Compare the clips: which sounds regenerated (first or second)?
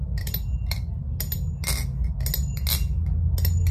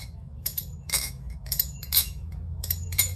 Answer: second